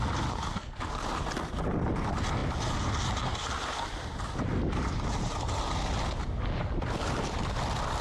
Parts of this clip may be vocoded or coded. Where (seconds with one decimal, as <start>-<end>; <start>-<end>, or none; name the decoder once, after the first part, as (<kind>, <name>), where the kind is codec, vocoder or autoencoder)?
0.5-1.0 (codec, SNAC)